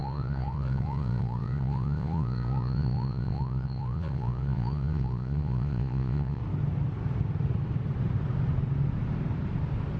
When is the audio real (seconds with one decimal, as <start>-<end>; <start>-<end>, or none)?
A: 6.4-10.0